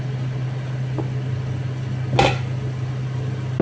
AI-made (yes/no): no